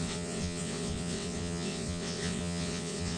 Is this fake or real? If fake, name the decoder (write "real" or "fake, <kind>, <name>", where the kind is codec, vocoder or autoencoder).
fake, vocoder, WaveNeXt